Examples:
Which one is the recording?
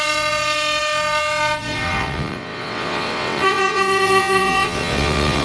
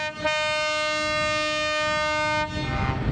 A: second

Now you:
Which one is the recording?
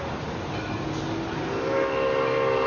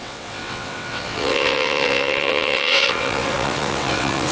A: first